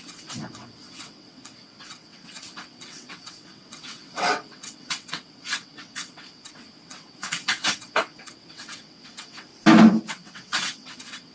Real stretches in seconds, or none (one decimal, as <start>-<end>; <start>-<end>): 9.5-10.1